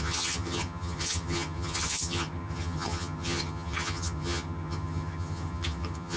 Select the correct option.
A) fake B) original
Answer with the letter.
A